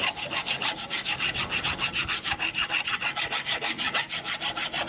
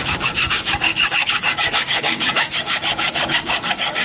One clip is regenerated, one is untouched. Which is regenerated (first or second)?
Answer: second